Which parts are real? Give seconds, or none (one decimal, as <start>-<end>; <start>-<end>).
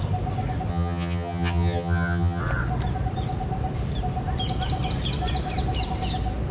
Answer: 0.0-0.7; 2.4-6.5